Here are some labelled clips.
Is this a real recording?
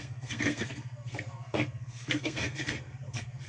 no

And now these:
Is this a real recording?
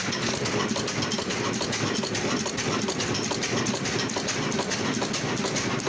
yes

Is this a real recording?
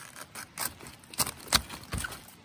yes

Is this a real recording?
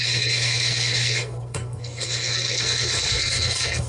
no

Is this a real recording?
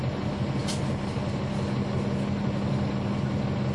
yes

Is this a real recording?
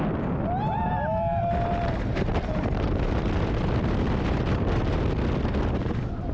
yes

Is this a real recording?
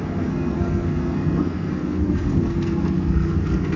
no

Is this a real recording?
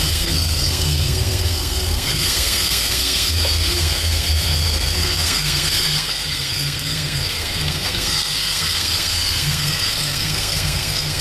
no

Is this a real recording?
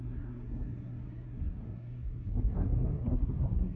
no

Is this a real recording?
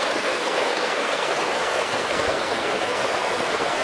no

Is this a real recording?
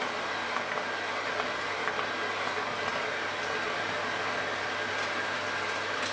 yes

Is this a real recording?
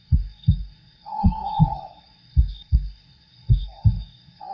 no